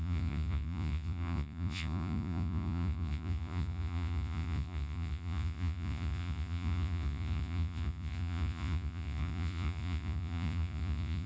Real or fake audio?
fake